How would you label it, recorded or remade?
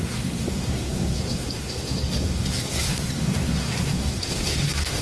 remade